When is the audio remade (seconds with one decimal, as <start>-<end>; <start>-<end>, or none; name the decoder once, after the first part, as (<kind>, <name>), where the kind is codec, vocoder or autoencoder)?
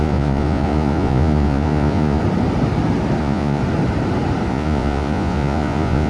0.0-2.2 (vocoder, Vocos); 3.2-3.6; 4.5-6.1